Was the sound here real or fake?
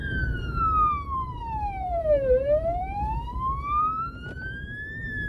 fake